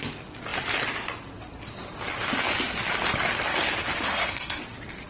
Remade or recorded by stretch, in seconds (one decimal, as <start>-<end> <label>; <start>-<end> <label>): 0.0-4.1 recorded; 4.1-4.6 remade; 4.6-5.1 recorded